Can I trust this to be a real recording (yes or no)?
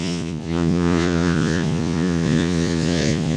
no